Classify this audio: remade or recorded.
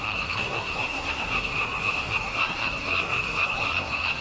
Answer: remade